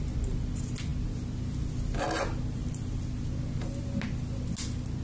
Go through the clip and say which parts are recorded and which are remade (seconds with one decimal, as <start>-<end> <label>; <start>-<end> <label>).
0.0-5.0 recorded